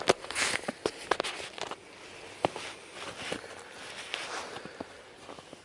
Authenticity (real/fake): real